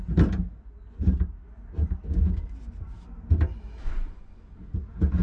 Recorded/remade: recorded